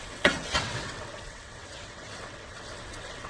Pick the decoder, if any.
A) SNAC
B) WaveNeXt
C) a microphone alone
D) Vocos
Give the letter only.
B